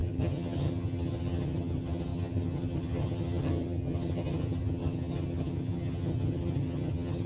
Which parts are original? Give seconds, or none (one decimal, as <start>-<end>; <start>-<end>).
none